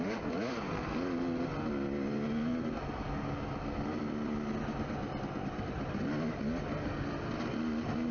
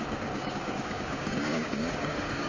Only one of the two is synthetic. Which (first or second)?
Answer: second